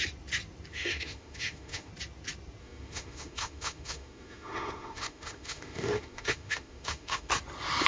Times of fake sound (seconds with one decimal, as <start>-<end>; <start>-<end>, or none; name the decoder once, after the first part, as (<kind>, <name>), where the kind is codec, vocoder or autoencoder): 0.7-1.9 (autoencoder, DAC-VAE); 2.6-7.3